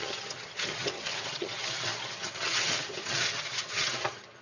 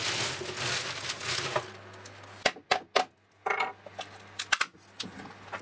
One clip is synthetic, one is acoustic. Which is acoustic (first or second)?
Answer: second